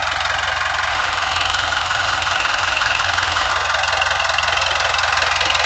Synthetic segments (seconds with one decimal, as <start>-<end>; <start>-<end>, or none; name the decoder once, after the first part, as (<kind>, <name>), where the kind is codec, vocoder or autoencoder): 0.9-3.5 (autoencoder, DAC-VAE)